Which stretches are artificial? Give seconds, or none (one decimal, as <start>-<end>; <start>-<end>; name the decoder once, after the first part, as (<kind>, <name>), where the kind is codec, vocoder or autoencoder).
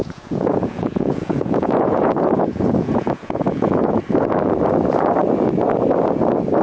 0.0-4.0 (vocoder, Vocos)